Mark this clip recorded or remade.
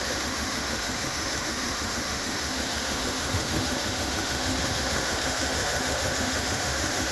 remade